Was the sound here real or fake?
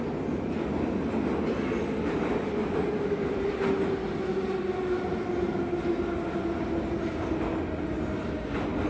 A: real